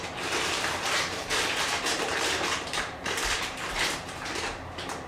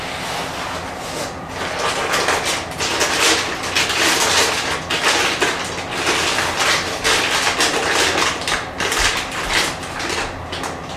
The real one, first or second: second